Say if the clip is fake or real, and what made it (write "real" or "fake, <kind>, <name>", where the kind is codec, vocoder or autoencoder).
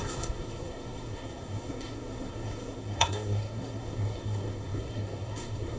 fake, codec, SNAC